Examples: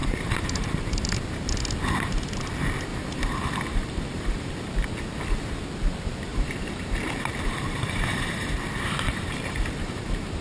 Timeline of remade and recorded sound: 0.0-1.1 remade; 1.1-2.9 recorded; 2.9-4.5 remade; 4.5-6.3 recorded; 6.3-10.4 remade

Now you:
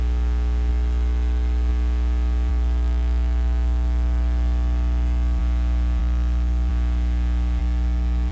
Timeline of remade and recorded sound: 0.0-0.7 recorded; 0.7-1.7 remade; 1.7-2.5 recorded; 2.5-5.4 remade; 5.4-6.0 recorded; 6.0-6.7 remade; 6.7-7.6 recorded; 7.6-8.3 remade